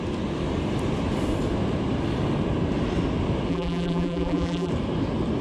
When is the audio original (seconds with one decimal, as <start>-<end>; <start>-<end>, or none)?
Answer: 0.0-3.5; 4.7-5.4